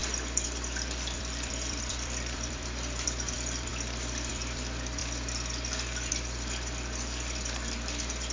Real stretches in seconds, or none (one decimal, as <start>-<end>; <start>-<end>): 3.7-4.3; 5.0-6.1